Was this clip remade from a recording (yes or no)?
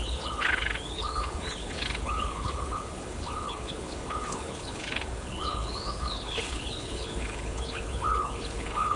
yes